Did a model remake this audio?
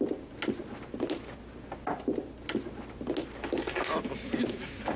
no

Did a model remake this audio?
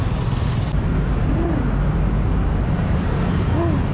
no